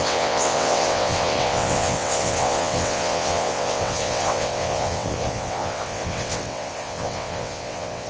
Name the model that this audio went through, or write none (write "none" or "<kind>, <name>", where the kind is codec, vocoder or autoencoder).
vocoder, WaveNeXt